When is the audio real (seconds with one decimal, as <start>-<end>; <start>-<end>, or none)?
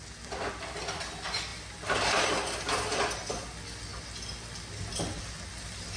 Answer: 0.0-6.0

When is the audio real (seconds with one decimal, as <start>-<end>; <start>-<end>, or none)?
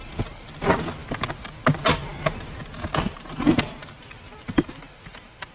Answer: 0.0-5.5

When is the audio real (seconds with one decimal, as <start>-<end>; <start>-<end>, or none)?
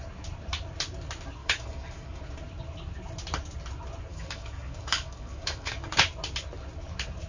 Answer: 0.0-1.4; 2.2-4.1; 5.9-7.3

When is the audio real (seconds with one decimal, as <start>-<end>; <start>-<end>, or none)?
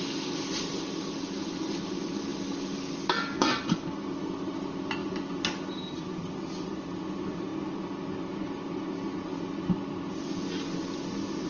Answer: 0.0-11.5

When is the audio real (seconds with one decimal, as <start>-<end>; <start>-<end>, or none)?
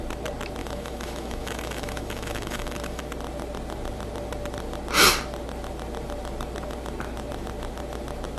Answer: 0.0-0.6; 3.0-8.4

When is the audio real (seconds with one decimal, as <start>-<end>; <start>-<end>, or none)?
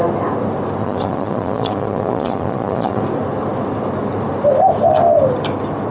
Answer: 0.0-0.8; 3.0-5.9